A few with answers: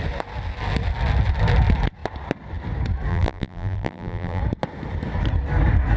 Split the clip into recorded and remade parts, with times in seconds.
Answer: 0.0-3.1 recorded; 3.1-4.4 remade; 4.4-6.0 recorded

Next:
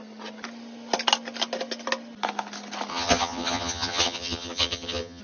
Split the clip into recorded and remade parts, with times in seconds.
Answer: 0.0-2.9 recorded; 2.9-5.2 remade

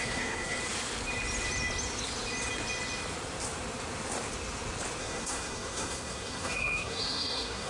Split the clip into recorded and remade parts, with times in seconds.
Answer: 0.0-0.6 remade; 0.6-5.0 recorded; 5.0-7.7 remade

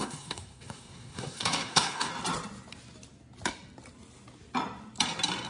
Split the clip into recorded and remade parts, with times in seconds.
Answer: 0.0-2.1 remade; 2.1-5.5 recorded

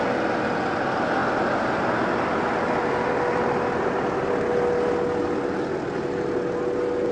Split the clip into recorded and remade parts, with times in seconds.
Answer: 0.0-7.1 recorded

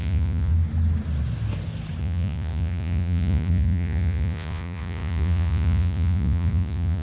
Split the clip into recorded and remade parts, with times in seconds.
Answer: 0.0-0.5 remade; 0.5-2.0 recorded; 2.0-7.0 remade